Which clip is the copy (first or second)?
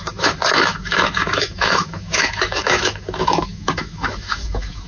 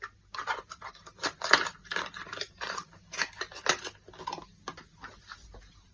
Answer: first